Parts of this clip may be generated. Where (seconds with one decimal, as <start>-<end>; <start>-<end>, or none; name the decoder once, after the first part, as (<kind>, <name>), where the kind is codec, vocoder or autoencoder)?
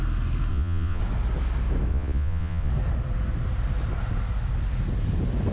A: 0.5-1.0 (vocoder, Vocos); 1.9-2.7